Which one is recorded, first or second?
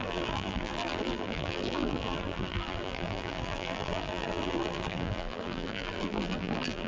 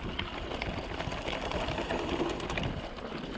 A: second